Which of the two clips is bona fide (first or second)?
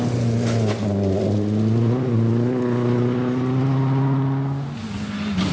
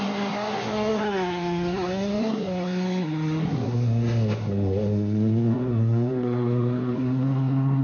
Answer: first